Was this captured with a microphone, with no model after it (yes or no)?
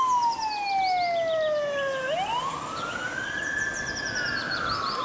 yes